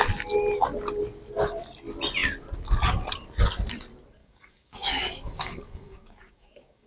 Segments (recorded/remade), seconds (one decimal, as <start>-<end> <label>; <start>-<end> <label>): 0.0-4.2 recorded; 4.2-6.9 remade